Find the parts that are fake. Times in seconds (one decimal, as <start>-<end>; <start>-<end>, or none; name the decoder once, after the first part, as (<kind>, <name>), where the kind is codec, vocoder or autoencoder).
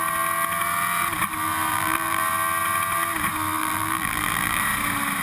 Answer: 1.7-2.2 (vocoder, BigVGAN v2); 3.6-4.6